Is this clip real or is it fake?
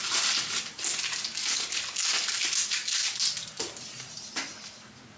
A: real